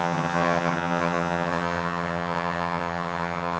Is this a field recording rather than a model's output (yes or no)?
no